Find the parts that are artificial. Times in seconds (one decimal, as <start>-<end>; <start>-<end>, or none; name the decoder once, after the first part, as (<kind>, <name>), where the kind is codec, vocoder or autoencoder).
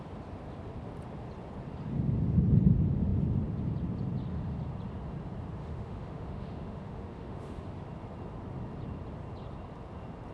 5.6-7.6 (autoencoder, DAC-VAE)